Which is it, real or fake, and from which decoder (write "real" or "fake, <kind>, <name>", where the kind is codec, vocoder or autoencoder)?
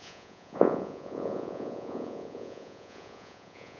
fake, vocoder, Vocos